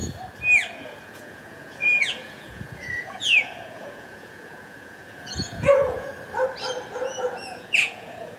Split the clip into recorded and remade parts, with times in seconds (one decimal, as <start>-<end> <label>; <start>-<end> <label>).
0.0-0.8 recorded; 0.8-6.1 remade; 6.1-7.0 recorded; 7.0-8.4 remade